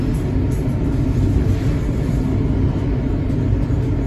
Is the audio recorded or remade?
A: recorded